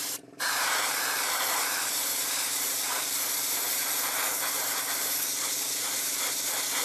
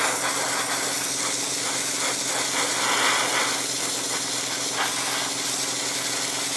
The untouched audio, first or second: second